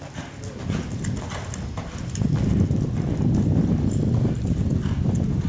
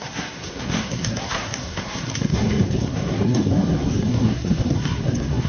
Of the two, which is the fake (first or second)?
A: second